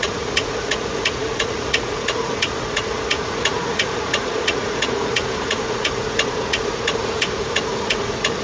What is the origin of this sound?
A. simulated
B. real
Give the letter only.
A